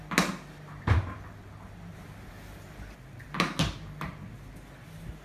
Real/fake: real